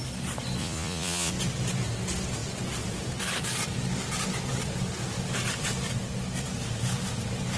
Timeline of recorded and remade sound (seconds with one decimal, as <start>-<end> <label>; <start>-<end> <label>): 0.0-0.6 recorded; 0.6-1.3 remade; 1.3-7.6 recorded